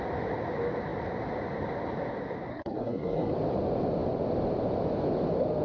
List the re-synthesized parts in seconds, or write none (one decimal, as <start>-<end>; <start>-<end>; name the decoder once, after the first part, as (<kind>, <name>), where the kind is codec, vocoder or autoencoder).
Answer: 2.5-3.3 (codec, SNAC)